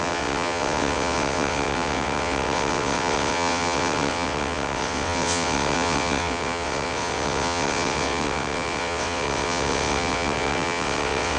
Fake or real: fake